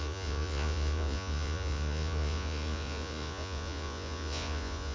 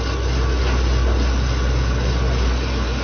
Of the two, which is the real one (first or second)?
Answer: second